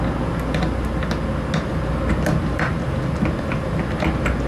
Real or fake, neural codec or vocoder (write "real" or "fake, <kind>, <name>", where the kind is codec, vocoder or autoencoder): real